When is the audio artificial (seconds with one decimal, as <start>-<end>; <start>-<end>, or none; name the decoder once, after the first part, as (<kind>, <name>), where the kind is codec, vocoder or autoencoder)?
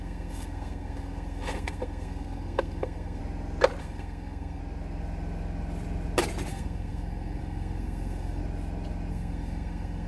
0.0-3.2 (codec, SNAC); 3.8-4.6; 6.5-8.4; 9.1-10.1